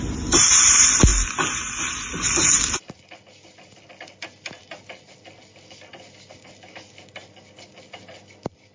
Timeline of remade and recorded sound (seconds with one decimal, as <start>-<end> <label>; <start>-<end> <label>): 0.0-8.7 recorded